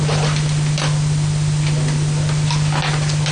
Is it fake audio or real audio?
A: real